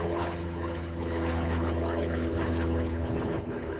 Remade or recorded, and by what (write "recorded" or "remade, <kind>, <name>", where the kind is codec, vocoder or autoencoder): remade, codec, HILCodec